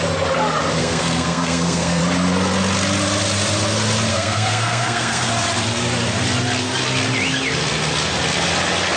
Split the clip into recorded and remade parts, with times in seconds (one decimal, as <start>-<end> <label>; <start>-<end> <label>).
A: 0.0-0.8 recorded; 0.8-2.0 remade; 2.0-4.1 recorded; 4.1-5.3 remade; 5.3-9.0 recorded